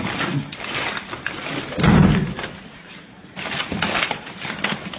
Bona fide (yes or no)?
yes